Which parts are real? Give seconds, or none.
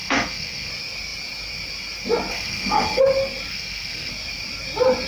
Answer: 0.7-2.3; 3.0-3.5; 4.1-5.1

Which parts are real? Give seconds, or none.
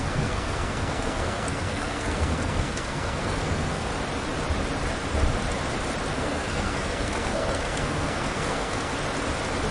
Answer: 3.9-6.1; 8.9-9.7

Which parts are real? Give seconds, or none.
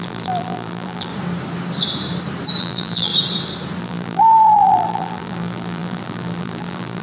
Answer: 1.1-2.6; 3.1-3.8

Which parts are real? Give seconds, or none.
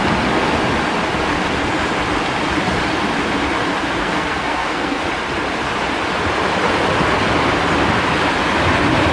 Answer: 0.0-4.0; 5.0-9.1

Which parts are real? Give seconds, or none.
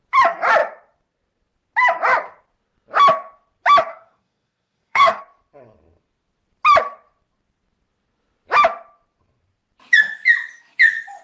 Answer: 0.0-3.9; 5.2-11.2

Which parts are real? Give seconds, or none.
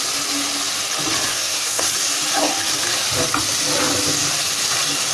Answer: 0.0-1.3; 1.8-5.1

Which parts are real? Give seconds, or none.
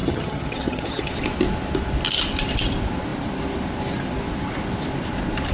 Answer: 1.1-5.5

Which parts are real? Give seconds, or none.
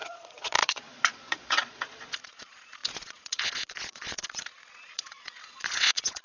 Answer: none